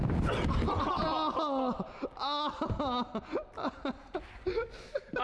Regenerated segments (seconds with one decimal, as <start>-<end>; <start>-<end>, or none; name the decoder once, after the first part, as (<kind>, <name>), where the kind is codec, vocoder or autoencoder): none